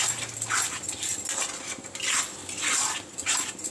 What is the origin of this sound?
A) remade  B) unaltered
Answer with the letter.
B